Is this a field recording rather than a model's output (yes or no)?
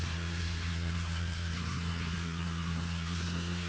no